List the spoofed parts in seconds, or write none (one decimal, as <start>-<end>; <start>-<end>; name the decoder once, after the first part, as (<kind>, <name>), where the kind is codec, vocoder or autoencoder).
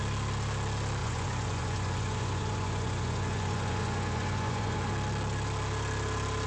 1.0-4.9 (vocoder, Vocos)